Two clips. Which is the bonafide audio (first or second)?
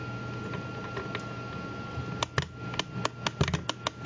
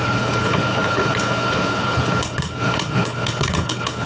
first